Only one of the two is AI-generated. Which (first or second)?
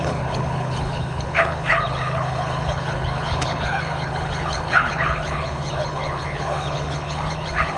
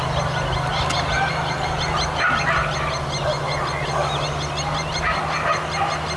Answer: first